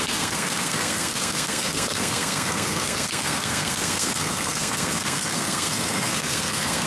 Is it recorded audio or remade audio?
remade